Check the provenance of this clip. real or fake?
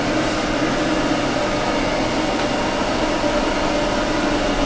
real